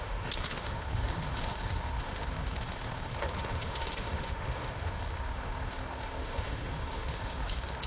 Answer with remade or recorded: remade